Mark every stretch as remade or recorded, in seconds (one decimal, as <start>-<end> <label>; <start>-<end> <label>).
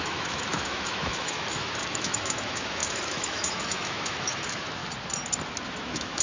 0.0-4.8 remade; 4.8-5.7 recorded; 5.7-6.2 remade